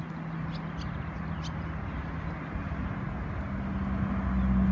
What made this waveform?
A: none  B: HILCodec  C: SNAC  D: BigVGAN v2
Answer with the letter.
A